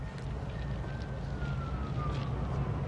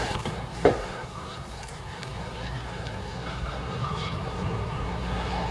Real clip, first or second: first